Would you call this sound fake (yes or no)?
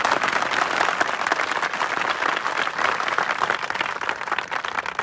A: no